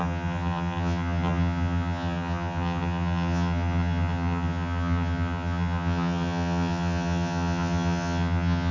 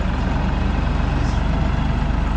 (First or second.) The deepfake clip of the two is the first